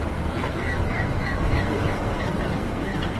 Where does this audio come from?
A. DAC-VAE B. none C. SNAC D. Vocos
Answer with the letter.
C